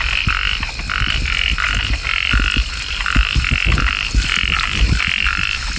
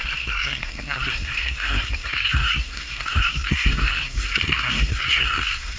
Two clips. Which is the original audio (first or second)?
first